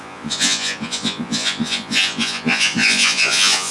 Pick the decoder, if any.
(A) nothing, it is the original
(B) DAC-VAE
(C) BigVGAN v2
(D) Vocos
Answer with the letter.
D